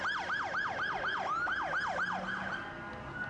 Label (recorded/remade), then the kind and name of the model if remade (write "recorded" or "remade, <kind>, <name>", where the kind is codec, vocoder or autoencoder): recorded